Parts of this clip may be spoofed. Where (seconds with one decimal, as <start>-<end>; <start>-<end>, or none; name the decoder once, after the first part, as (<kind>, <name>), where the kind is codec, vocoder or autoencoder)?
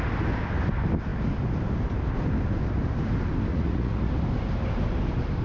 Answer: 3.5-4.1 (vocoder, Vocos)